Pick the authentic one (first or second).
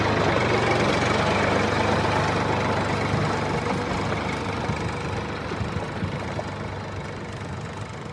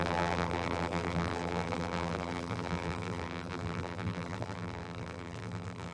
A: first